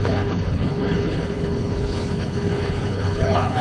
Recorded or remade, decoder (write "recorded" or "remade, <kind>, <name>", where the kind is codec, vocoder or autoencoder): remade, codec, HILCodec